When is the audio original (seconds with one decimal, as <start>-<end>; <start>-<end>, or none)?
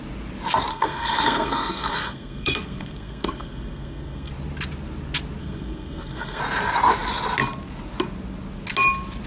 0.0-0.7; 4.3-5.4; 6.4-9.3